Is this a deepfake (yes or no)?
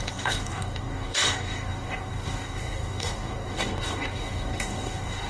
yes